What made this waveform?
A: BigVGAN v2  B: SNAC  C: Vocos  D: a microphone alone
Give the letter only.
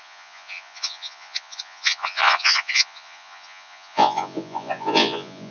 C